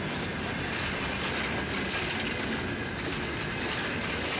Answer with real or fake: real